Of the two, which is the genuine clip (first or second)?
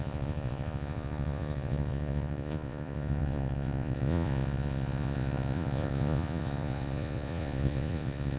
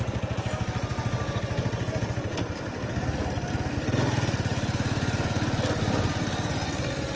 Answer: second